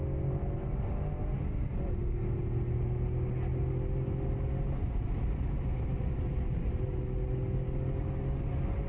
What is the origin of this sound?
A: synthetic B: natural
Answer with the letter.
B